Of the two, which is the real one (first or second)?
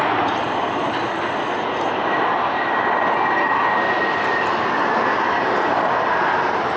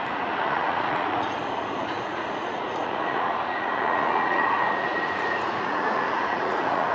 first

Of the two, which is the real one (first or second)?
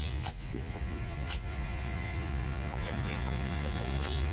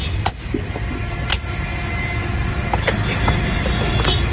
second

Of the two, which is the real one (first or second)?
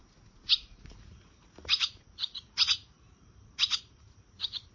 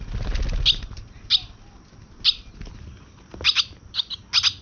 second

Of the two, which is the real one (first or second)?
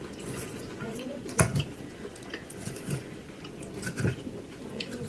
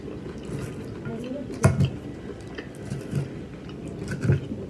second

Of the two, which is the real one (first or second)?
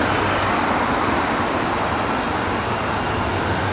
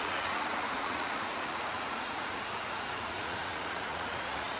first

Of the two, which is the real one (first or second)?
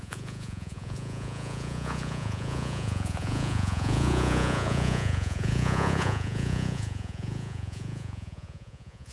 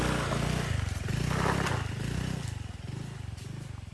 second